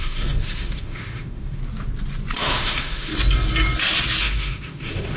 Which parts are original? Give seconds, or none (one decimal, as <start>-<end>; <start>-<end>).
1.6-2.4; 3.1-4.2